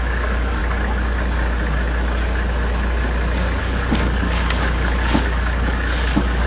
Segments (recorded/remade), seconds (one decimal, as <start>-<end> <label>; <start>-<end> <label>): 0.0-0.6 remade; 0.6-3.6 recorded; 3.6-6.5 remade

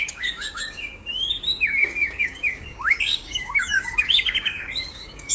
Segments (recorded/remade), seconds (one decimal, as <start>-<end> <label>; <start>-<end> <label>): 0.0-5.3 remade

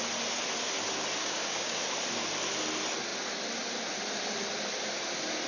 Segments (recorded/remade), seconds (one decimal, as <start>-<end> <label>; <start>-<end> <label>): 0.0-1.2 recorded; 1.2-1.8 remade; 1.8-5.5 recorded